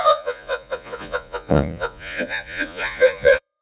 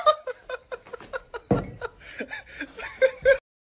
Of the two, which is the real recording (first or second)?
second